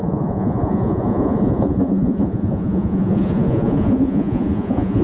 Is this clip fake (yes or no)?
yes